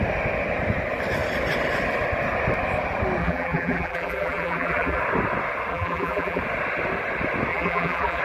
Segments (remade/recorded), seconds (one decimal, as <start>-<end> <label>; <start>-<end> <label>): 0.0-3.2 recorded; 3.2-5.0 remade; 5.0-5.7 recorded; 5.7-6.4 remade; 6.4-7.5 recorded; 7.5-8.2 remade